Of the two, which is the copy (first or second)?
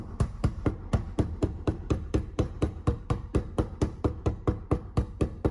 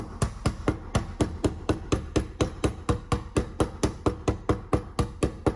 first